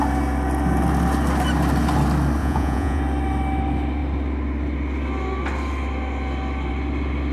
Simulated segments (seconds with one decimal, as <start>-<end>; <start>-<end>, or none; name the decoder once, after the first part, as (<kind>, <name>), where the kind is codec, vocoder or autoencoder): 2.4-3.0 (vocoder, Vocos)